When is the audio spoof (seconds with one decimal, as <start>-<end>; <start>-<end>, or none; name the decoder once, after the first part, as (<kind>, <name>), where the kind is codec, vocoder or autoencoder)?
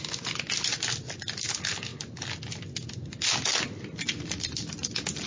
none